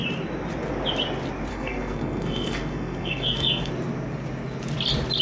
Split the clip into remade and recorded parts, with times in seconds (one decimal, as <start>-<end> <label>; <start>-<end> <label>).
0.0-1.5 recorded; 1.5-3.7 remade; 3.7-5.2 recorded